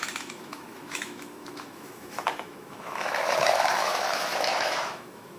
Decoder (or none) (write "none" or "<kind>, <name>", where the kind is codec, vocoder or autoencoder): autoencoder, DAC-VAE